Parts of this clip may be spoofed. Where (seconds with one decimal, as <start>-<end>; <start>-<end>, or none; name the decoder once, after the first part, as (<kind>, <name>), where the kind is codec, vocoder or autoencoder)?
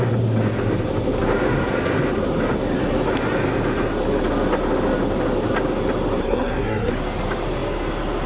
6.2-6.9 (codec, SNAC)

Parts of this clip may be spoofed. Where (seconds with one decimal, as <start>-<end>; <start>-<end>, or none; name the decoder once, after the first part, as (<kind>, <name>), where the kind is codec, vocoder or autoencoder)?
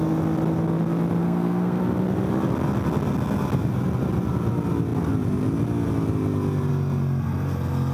1.2-1.8 (codec, SNAC)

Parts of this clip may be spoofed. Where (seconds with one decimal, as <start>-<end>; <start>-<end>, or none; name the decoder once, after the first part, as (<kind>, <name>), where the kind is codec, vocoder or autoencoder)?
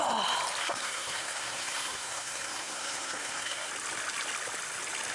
0.6-3.7 (codec, SNAC)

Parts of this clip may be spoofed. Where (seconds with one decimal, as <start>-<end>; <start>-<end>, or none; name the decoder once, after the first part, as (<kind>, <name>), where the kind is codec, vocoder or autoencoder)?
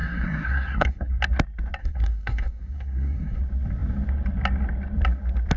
0.0-1.1 (codec, SNAC); 1.8-3.4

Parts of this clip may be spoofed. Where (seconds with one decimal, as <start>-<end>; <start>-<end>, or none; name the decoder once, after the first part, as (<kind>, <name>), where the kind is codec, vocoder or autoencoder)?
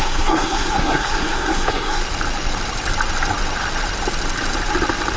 0.0-2.0 (codec, SNAC)